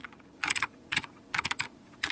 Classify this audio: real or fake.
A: fake